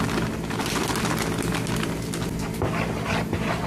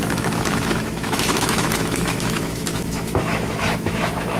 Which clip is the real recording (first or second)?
first